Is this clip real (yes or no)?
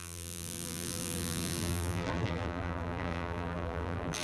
no